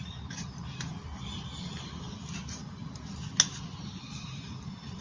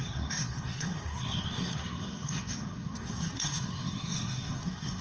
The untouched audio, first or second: first